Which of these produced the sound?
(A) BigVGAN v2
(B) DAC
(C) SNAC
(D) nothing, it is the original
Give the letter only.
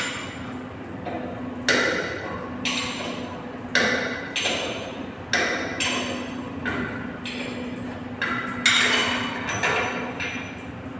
D